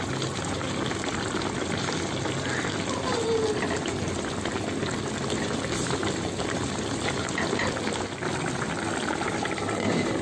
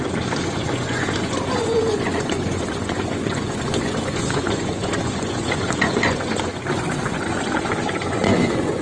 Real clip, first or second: first